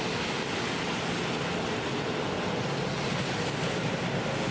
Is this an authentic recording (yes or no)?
yes